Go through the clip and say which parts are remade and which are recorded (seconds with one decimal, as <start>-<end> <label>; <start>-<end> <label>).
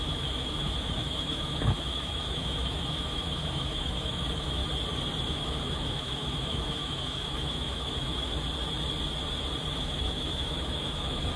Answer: 0.0-4.6 remade; 4.6-5.3 recorded; 5.3-8.3 remade; 8.3-9.7 recorded; 9.7-11.4 remade